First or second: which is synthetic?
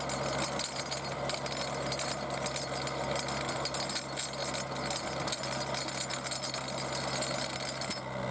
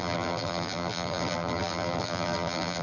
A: second